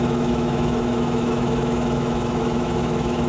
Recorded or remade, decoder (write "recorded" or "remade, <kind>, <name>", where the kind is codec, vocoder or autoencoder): remade, autoencoder, DAC-VAE